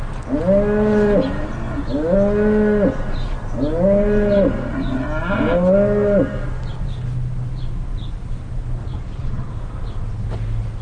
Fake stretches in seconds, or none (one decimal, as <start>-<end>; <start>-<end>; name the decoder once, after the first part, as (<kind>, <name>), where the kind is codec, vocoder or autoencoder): 8.8-9.5 (vocoder, Vocos)